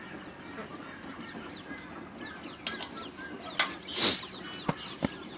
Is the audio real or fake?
real